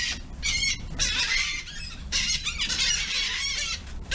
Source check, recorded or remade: remade